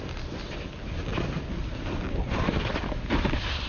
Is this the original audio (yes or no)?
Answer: yes